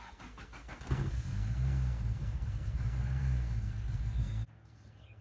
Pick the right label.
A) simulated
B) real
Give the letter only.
A